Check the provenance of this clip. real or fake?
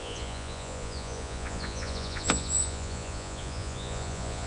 fake